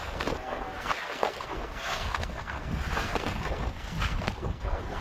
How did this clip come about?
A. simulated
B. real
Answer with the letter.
A